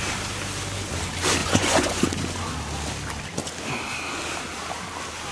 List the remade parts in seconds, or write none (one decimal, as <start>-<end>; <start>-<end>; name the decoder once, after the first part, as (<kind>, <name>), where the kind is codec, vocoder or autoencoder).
1.4-2.0 (vocoder, Vocos)